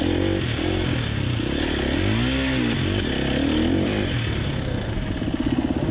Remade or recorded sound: recorded